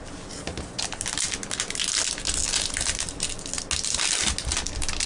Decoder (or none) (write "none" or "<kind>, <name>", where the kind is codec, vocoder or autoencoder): none